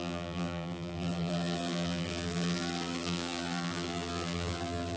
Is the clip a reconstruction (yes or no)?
yes